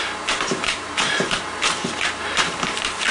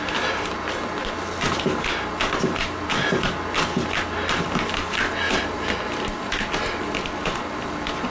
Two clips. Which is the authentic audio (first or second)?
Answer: second